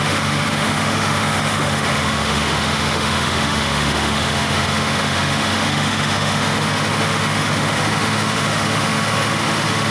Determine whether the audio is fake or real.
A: fake